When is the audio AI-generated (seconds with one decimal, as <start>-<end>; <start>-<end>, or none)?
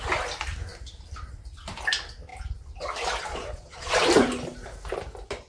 3.3-4.0